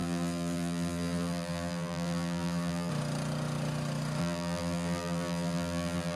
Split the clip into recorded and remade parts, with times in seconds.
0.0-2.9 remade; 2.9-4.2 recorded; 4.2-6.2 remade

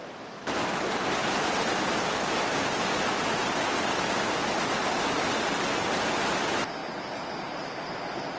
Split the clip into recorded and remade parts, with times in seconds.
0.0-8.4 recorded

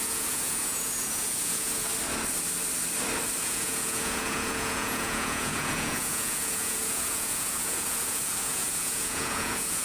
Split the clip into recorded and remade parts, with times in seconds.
0.0-1.9 remade; 1.9-3.4 recorded; 3.4-9.8 remade

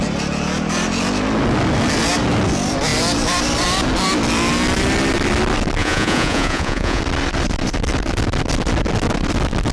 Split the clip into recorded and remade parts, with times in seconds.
0.0-5.8 recorded; 5.8-7.0 remade; 7.0-9.7 recorded